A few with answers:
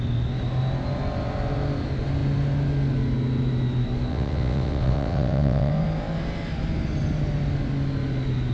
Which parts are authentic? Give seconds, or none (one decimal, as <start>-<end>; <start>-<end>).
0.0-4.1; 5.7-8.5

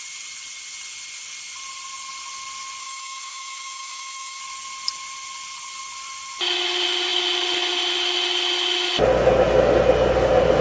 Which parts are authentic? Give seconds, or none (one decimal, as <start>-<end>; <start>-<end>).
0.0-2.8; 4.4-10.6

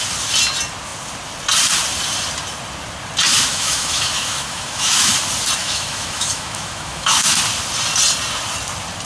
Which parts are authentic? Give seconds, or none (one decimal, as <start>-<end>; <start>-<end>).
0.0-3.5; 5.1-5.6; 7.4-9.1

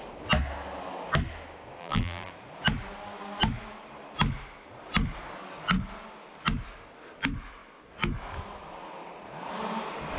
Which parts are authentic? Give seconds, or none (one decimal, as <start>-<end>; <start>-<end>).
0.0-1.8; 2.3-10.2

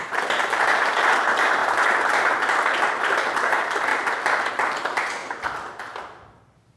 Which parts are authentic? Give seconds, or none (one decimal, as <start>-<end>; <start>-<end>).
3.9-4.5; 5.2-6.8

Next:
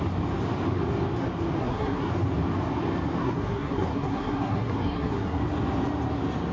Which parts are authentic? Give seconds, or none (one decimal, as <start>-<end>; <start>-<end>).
0.0-1.6; 2.1-3.2; 5.4-6.5

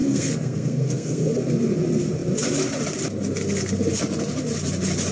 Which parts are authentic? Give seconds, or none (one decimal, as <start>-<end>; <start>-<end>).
1.3-5.1